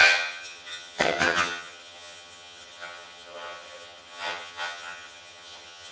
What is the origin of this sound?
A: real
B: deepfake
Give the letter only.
B